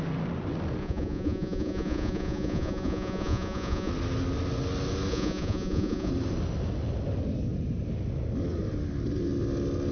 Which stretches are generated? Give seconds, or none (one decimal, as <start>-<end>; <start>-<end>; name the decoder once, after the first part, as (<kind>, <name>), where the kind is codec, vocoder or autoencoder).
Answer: 0.8-3.9 (vocoder, Vocos); 5.1-6.1